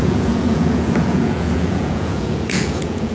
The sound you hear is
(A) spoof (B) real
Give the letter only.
A